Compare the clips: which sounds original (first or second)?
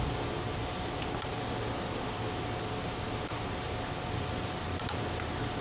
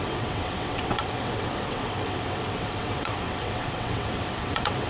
first